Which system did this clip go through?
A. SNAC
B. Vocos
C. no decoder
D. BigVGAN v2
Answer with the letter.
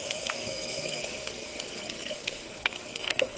A